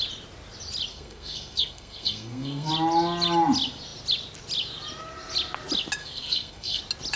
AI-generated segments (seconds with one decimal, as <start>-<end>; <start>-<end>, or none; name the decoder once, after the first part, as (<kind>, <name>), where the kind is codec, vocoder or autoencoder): 0.9-2.7 (codec, SNAC); 6.0-6.8